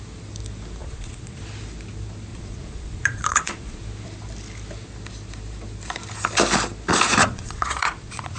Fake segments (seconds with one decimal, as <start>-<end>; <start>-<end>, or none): 0.8-1.4; 2.3-3.8; 7.2-8.4